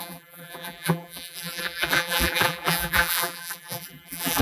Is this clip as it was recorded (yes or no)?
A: no